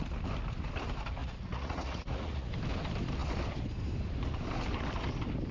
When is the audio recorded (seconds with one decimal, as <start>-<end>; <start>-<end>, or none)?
0.0-1.2; 2.5-5.5